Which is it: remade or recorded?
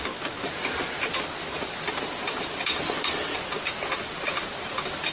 recorded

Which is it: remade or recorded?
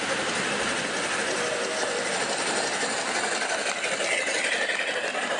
recorded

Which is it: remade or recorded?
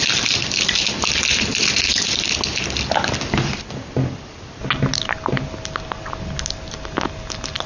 recorded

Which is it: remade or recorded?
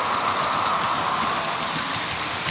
recorded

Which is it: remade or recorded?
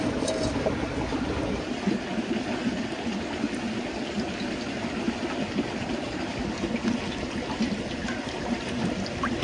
recorded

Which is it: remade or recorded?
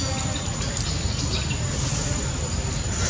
recorded